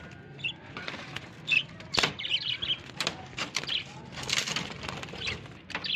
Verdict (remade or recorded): recorded